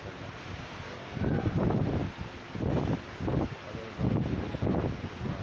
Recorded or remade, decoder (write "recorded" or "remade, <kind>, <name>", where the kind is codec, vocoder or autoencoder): recorded